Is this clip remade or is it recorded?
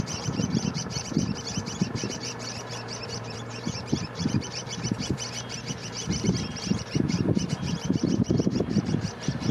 remade